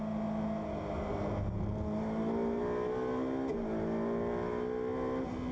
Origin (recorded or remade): recorded